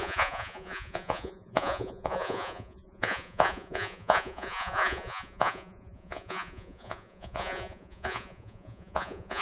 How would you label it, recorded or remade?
remade